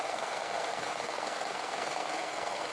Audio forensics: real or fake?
fake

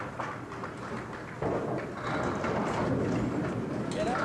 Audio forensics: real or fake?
real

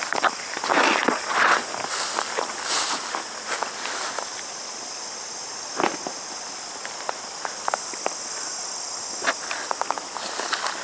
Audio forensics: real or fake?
real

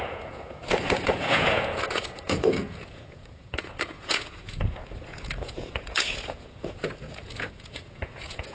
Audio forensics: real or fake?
fake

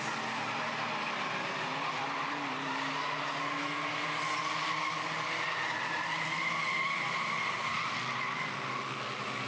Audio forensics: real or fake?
real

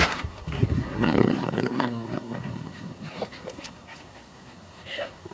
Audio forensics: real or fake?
fake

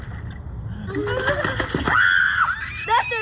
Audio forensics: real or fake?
real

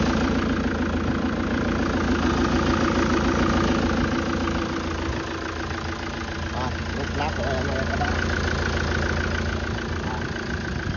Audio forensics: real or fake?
real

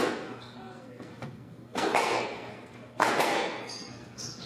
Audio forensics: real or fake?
fake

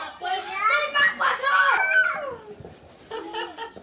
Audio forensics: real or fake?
real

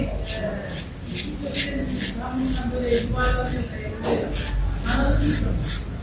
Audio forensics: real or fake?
real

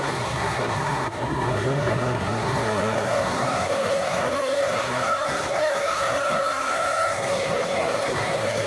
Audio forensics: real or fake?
fake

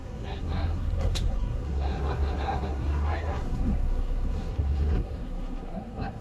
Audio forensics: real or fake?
fake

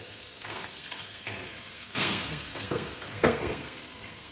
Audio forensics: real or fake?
fake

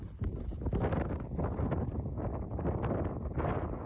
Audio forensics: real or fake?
real